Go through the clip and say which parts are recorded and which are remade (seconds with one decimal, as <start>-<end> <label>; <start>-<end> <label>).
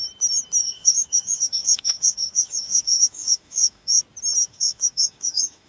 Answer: 0.0-0.6 recorded; 0.6-4.0 remade; 4.0-4.4 recorded; 4.4-5.7 remade